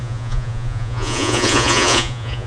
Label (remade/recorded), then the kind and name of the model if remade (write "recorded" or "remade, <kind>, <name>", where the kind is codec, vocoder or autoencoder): remade, vocoder, Vocos